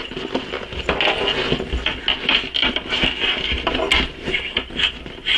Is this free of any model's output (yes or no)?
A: yes